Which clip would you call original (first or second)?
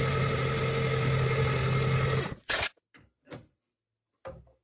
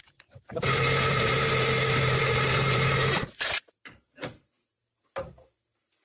first